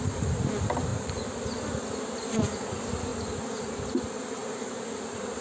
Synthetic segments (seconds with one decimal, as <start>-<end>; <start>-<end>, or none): 0.9-1.4

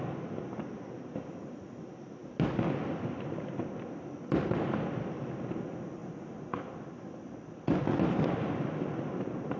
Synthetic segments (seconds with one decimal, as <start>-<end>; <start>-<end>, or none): 0.0-2.2; 5.1-9.6

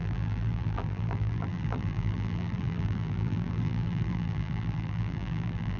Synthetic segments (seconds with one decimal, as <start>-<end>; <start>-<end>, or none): 0.0-5.8

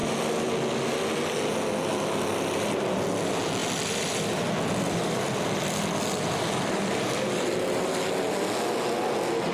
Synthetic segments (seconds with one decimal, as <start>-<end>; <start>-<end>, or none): 3.6-8.1

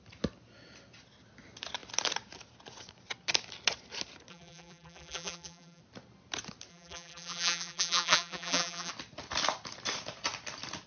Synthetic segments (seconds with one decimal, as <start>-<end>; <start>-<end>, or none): 4.3-5.8; 6.7-8.9